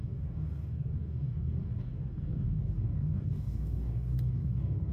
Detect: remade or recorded remade